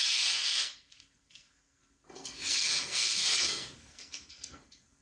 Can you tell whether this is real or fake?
fake